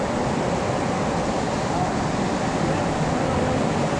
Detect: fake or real real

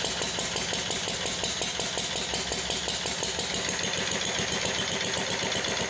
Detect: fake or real real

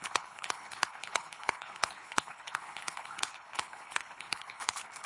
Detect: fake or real fake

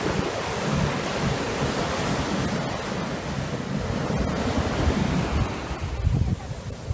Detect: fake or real real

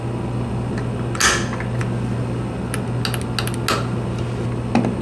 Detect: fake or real real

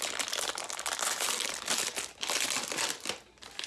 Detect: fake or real real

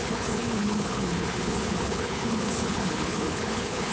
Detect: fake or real fake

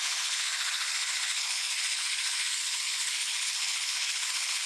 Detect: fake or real fake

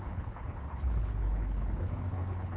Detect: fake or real fake